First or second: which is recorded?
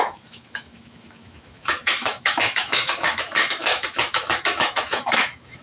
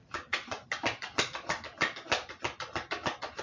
second